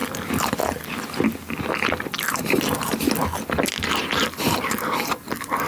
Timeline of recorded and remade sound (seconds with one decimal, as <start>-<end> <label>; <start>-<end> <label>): 0.0-5.7 recorded